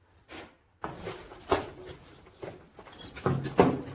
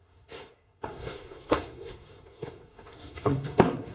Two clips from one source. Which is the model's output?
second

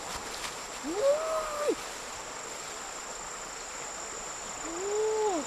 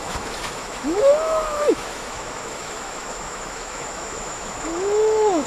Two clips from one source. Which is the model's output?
second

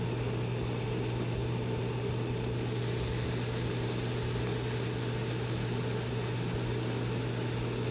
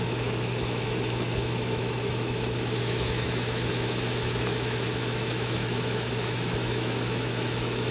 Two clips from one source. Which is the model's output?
second